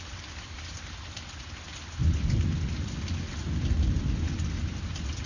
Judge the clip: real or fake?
real